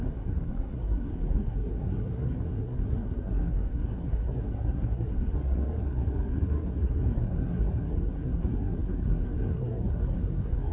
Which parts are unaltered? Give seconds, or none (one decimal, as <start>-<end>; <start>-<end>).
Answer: none

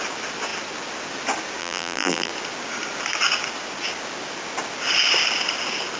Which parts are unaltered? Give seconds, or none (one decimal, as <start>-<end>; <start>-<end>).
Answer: 0.0-1.6; 2.3-6.0

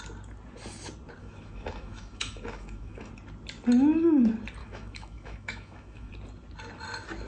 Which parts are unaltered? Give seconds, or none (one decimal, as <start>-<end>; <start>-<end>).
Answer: 0.0-1.2; 3.1-4.6; 6.1-7.3

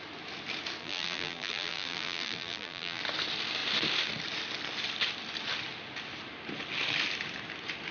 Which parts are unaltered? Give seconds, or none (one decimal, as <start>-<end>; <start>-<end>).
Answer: 0.0-0.8; 3.0-7.9

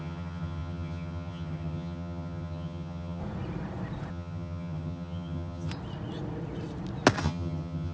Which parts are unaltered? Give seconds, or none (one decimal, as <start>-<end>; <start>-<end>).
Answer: 3.2-4.1; 5.7-7.2